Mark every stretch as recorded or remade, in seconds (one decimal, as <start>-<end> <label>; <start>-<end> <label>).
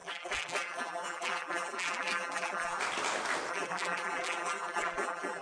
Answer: 0.0-2.8 remade; 2.8-3.5 recorded; 3.5-5.4 remade